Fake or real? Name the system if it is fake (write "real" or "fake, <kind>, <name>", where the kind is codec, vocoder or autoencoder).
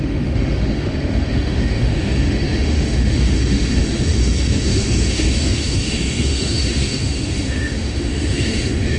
fake, autoencoder, DAC-VAE